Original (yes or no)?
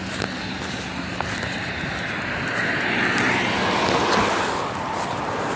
yes